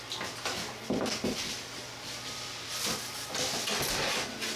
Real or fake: real